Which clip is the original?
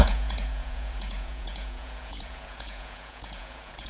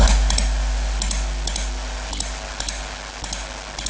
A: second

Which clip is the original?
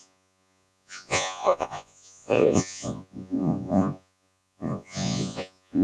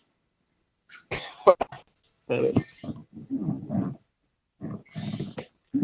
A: second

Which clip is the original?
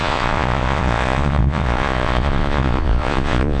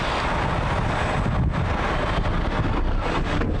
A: second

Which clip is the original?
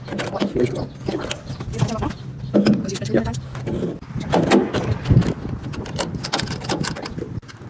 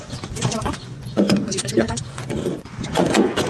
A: first